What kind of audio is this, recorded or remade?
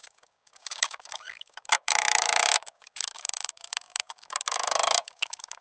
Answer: remade